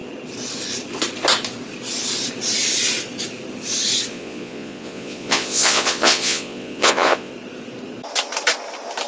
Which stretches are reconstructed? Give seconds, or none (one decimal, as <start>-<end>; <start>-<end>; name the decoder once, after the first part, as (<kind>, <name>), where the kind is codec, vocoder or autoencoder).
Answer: 4.1-7.3 (vocoder, Vocos)